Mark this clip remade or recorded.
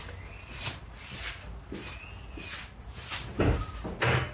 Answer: recorded